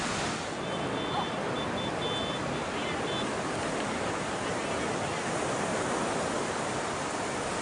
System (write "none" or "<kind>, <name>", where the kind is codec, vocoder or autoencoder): none